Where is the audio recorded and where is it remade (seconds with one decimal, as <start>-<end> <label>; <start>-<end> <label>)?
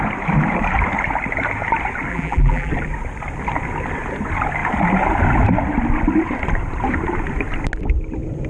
0.0-2.1 recorded; 2.1-2.7 remade; 2.7-8.5 recorded